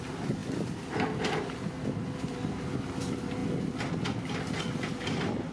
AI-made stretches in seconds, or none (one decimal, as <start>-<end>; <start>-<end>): none